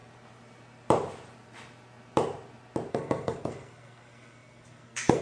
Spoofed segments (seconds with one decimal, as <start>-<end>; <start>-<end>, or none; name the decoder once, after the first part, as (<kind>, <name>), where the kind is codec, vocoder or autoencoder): 2.9-5.2 (codec, SNAC)